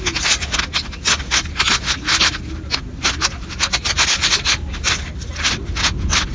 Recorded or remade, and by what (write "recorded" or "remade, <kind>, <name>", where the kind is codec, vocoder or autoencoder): recorded